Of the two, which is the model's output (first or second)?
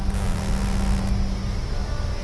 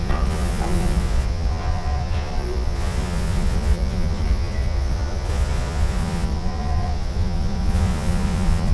second